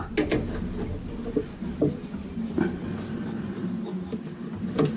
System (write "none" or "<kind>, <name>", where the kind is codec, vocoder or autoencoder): none